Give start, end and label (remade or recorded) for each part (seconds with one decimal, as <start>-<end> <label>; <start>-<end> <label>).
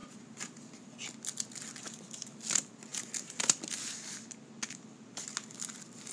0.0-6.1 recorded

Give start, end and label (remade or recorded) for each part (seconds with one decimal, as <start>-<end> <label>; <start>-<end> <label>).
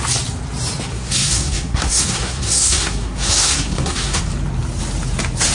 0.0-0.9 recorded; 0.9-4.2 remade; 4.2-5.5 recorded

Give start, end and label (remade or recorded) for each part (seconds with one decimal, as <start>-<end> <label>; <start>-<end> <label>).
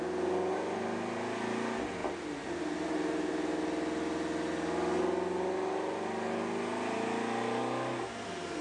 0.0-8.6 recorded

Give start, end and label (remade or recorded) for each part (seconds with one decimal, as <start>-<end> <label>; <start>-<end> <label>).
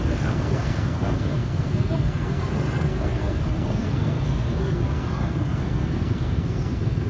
0.0-7.1 remade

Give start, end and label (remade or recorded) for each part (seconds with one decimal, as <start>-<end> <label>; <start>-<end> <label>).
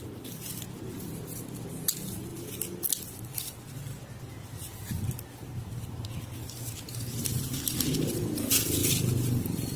0.0-9.8 recorded